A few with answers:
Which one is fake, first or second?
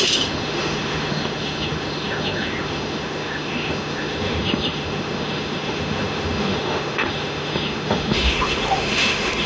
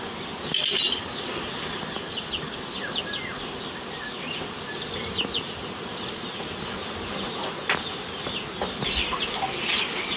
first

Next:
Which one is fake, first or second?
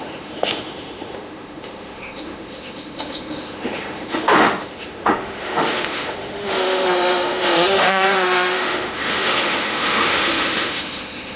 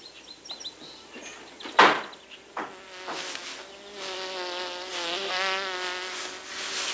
first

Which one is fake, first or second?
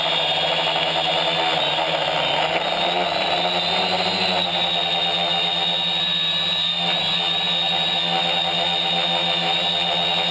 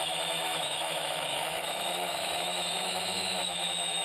second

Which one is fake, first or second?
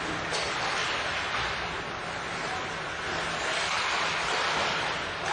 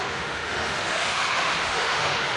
second